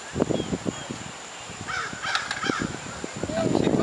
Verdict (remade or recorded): recorded